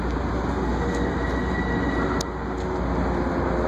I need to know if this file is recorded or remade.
recorded